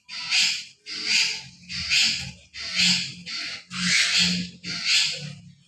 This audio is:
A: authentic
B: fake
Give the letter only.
A